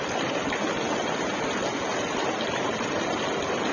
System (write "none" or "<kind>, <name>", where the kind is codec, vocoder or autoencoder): none